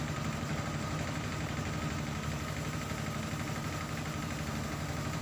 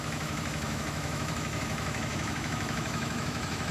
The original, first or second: first